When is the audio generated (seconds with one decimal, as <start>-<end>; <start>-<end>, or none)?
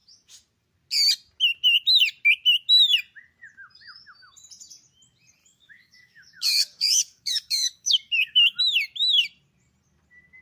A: 5.4-8.6